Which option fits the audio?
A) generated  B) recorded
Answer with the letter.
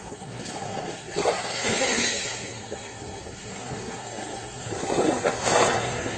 A